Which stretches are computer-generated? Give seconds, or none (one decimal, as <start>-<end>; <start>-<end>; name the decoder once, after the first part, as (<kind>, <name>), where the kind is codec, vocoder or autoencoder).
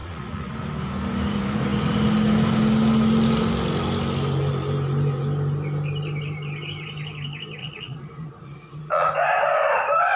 0.0-0.5 (vocoder, Vocos); 7.6-9.1